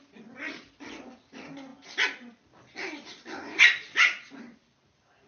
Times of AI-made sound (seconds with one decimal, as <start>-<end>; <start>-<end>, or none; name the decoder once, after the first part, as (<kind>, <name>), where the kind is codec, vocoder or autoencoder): none